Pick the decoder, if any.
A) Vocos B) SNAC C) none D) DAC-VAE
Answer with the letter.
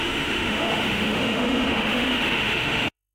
D